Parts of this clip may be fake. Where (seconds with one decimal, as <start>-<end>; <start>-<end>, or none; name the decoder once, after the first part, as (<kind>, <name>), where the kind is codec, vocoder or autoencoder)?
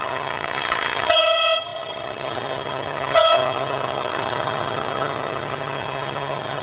0.0-6.6 (vocoder, HiFi-GAN)